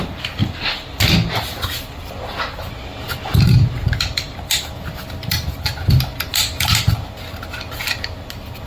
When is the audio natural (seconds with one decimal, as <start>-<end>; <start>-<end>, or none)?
0.4-3.1